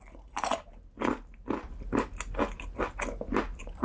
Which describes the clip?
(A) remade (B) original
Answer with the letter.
B